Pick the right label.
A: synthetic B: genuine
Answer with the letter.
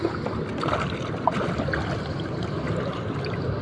B